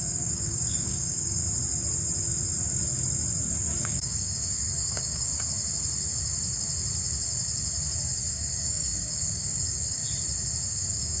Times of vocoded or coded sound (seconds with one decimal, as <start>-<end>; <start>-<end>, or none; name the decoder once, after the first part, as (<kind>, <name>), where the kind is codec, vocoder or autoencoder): 0.0-1.4 (codec, DAC); 3.8-5.3; 8.3-10.0; 10.7-11.2